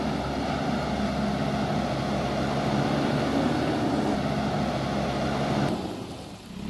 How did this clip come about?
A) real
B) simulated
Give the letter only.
A